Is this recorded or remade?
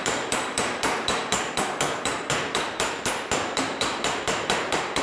remade